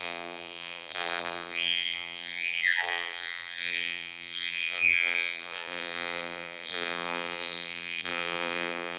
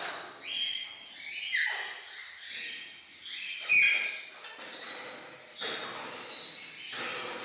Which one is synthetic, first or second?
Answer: first